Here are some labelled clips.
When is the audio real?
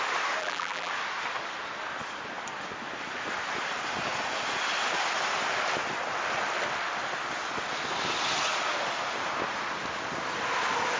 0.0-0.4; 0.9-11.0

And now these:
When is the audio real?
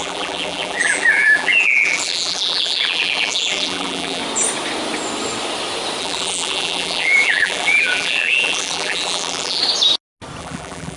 4.2-6.0; 9.6-10.4